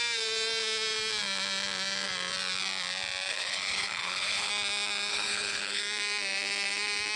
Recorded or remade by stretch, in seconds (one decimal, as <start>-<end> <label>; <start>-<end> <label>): 0.0-3.3 recorded; 3.3-4.5 remade; 4.5-5.1 recorded; 5.1-5.8 remade; 5.8-7.2 recorded